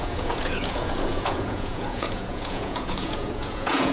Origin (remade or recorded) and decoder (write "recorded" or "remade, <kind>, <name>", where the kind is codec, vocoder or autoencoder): remade, vocoder, Vocos